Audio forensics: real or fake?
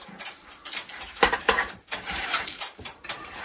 fake